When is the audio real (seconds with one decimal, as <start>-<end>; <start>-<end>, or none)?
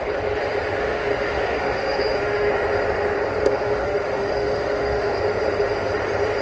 0.0-0.8; 2.5-3.4; 5.1-6.4